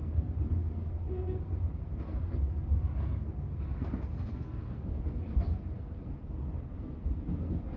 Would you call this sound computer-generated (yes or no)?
yes